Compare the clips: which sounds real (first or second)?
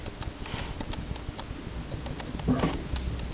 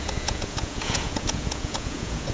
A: first